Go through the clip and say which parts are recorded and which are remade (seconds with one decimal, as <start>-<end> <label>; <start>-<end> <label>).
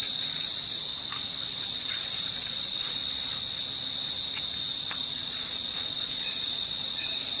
0.0-0.9 remade; 0.9-1.7 recorded; 1.7-3.0 remade; 3.0-5.0 recorded; 5.0-7.4 remade